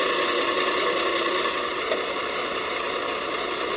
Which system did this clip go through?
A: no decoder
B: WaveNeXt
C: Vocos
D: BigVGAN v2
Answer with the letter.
A